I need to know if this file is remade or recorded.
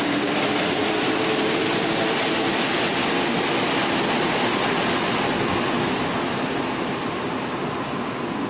recorded